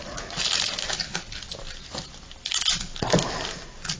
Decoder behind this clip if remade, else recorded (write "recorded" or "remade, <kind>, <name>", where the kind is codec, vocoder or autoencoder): recorded